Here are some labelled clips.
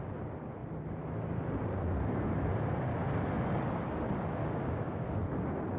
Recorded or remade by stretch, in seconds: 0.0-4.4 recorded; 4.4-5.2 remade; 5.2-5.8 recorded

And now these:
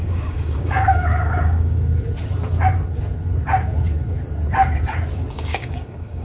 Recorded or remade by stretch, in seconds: 0.0-1.9 remade; 1.9-5.3 recorded; 5.3-6.2 remade

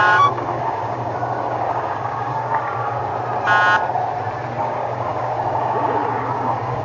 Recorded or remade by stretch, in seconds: 0.0-3.1 remade; 3.1-4.6 recorded; 4.6-6.8 remade

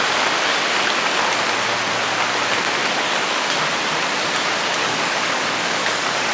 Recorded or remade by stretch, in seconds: 0.0-2.8 recorded; 2.8-3.4 remade; 3.4-4.8 recorded; 4.8-6.3 remade

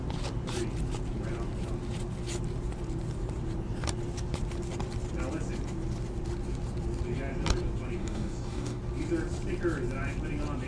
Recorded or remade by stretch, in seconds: 0.0-8.0 recorded; 8.0-8.8 remade; 8.8-10.7 recorded